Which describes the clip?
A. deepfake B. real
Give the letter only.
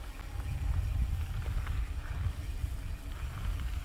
B